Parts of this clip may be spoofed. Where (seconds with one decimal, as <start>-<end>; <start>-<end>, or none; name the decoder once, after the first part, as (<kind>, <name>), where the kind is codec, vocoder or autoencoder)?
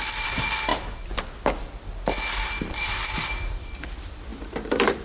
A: 0.0-0.7 (vocoder, BigVGAN v2); 2.6-5.0